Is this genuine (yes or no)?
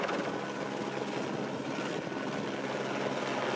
yes